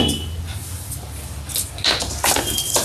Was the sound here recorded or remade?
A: recorded